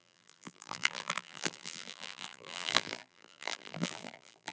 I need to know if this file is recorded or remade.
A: remade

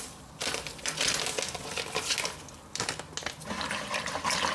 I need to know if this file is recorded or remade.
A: recorded